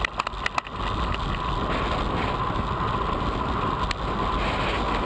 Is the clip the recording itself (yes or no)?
yes